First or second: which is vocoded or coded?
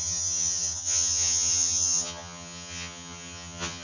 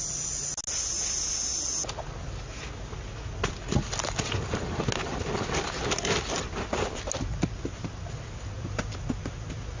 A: first